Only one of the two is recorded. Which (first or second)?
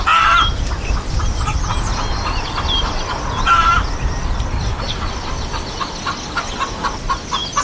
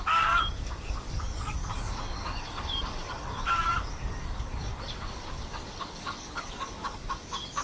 first